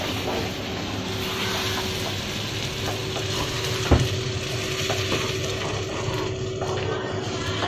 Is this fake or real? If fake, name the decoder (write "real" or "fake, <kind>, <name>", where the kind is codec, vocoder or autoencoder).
real